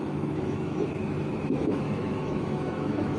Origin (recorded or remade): remade